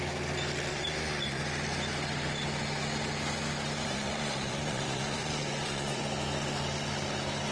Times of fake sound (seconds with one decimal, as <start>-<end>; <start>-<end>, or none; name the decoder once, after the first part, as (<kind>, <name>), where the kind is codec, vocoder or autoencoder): 0.7-1.4 (vocoder, Vocos); 3.9-6.0